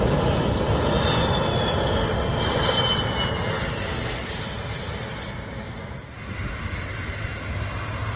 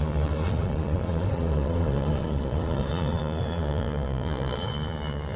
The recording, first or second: first